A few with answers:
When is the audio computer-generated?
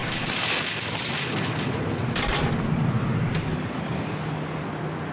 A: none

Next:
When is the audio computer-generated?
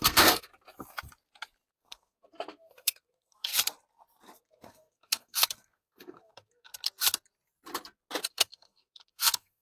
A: 0.0-0.5; 1.7-3.5; 4.4-6.7; 8.2-9.6